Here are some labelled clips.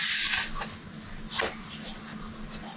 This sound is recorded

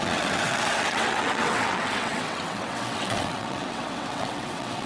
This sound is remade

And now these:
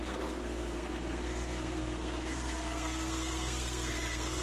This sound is remade